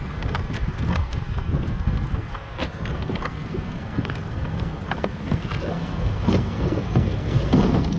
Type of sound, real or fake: fake